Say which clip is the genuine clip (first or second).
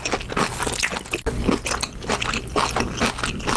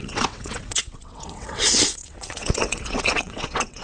first